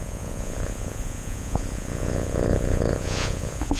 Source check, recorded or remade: remade